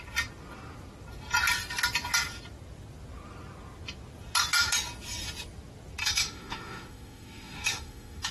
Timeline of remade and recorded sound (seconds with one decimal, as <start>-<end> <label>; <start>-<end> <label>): 0.0-6.0 recorded; 6.0-8.3 remade